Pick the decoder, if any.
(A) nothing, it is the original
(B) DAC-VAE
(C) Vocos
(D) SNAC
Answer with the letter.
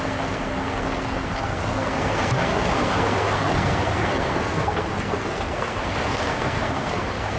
D